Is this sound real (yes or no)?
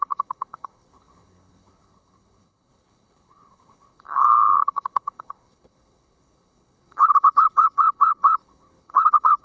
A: no